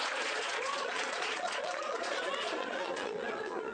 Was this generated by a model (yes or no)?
yes